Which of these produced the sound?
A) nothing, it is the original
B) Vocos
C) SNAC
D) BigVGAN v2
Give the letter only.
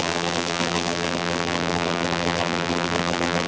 D